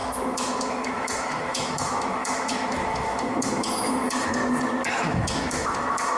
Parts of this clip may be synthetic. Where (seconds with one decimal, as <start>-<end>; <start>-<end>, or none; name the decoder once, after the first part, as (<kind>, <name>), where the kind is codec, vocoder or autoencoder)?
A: 0.0-4.4 (autoencoder, DAC-VAE); 4.9-6.2